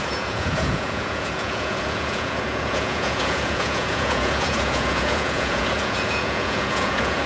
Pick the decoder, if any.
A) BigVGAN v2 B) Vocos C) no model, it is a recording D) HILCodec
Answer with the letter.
B